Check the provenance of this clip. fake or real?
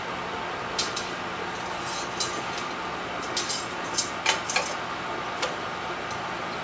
real